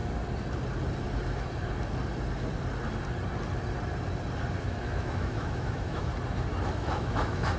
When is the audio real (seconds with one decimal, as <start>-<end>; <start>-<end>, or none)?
0.0-4.6; 6.1-6.7